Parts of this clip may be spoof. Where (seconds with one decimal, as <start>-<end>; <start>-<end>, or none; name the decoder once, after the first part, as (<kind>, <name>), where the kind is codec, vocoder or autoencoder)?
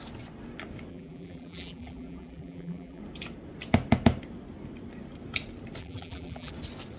0.9-3.0 (vocoder, BigVGAN v2); 5.8-6.5